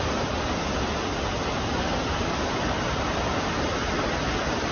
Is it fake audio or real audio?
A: real